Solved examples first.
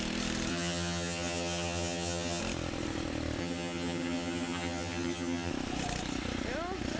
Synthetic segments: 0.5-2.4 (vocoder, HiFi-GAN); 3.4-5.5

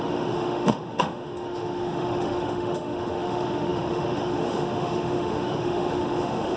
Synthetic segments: 0.0-6.6 (autoencoder, DAC-VAE)

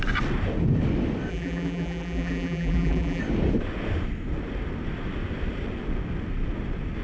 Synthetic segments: 1.3-3.2 (vocoder, BigVGAN v2)

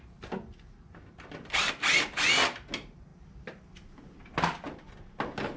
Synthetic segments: none

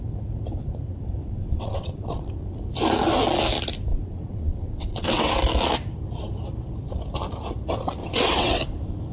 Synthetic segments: 1.2-2.3 (vocoder, WaveNeXt); 3.9-5.3; 8.0-8.6

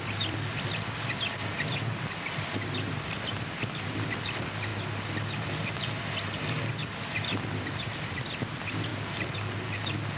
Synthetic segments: 0.0-4.7 (vocoder, BigVGAN v2); 6.7-8.9

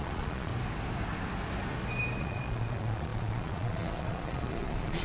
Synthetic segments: 0.0-0.5 (vocoder, Vocos); 2.2-5.0